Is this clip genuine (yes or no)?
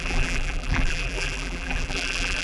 no